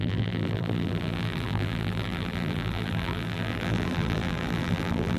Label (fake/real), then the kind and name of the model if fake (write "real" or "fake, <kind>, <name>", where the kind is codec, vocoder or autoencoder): fake, vocoder, BigVGAN v2